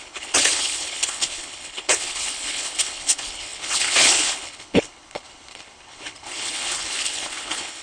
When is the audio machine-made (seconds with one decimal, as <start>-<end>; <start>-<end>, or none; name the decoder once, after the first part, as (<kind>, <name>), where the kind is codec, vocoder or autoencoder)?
0.0-7.8 (codec, HILCodec)